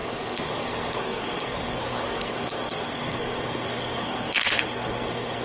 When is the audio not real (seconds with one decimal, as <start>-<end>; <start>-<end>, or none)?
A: 0.0-5.4